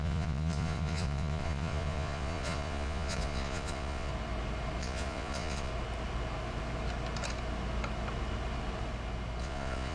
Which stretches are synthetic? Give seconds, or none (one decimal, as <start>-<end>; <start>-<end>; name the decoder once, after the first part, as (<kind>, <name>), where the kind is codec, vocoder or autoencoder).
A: 0.0-4.1 (vocoder, Vocos); 4.8-5.7; 9.4-9.9